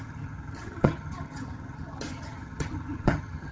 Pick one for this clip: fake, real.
fake